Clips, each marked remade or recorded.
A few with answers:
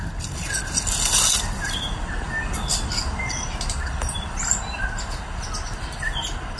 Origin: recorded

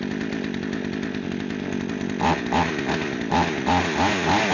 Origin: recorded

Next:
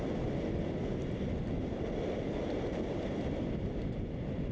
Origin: recorded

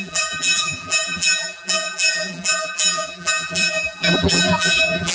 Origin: remade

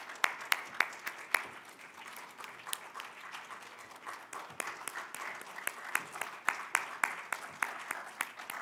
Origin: recorded